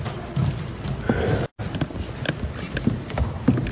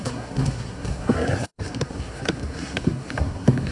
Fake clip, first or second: second